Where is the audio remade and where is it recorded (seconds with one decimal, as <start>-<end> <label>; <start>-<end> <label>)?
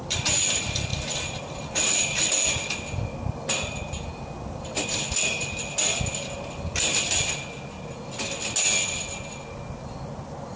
0.0-10.6 recorded